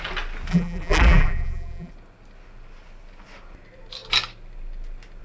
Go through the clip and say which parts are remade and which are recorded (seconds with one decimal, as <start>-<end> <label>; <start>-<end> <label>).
0.0-0.5 recorded; 0.5-1.9 remade; 1.9-5.2 recorded